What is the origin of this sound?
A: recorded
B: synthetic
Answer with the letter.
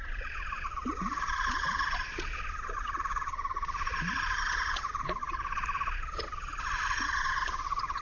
B